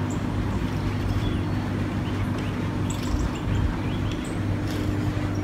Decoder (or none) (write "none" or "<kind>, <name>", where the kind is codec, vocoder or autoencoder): none